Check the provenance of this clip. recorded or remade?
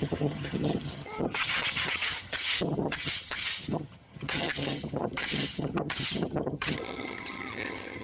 remade